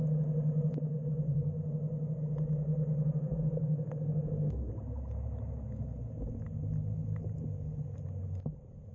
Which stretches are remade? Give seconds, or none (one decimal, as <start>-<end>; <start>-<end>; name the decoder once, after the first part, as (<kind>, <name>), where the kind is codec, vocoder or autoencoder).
3.3-4.7 (autoencoder, DAC-VAE)